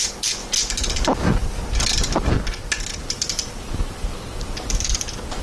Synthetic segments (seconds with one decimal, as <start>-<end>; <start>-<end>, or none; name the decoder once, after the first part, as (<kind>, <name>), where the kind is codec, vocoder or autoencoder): none